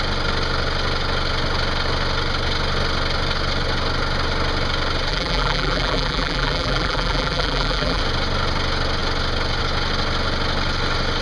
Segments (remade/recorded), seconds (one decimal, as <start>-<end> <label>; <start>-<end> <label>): 0.0-5.1 recorded; 5.1-8.0 remade; 8.0-11.2 recorded